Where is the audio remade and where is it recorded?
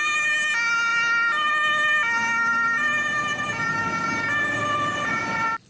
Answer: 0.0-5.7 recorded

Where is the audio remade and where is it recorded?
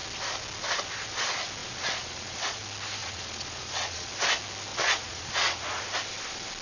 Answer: 0.0-1.6 recorded; 1.6-2.6 remade; 2.6-3.0 recorded; 3.0-4.1 remade; 4.1-4.7 recorded; 4.7-5.8 remade; 5.8-6.6 recorded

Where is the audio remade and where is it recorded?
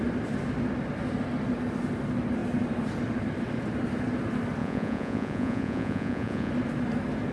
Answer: 0.0-4.6 recorded; 4.6-6.5 remade; 6.5-7.3 recorded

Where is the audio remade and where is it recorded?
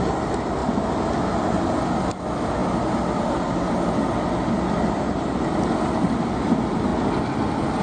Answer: 0.0-7.8 recorded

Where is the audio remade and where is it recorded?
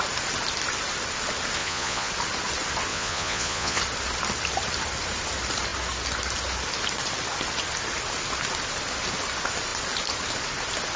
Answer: 0.0-1.6 recorded; 1.6-2.1 remade; 2.1-2.9 recorded; 2.9-3.8 remade; 3.8-11.0 recorded